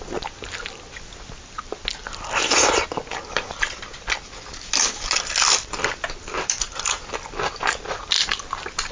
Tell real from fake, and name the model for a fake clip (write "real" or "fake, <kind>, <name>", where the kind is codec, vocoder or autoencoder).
real